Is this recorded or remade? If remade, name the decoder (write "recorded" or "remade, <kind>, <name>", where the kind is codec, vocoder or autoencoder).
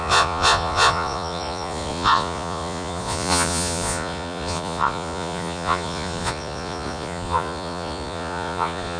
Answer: remade, vocoder, Vocos